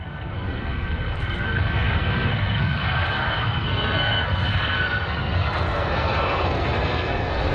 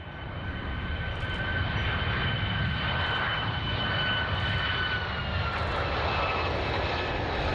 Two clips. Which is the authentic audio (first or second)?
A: second